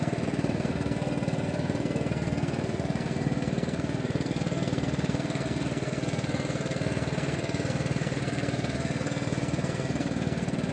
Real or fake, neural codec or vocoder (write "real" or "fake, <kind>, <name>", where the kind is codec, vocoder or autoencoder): fake, codec, SNAC